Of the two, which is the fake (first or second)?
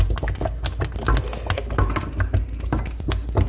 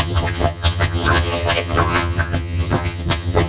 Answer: second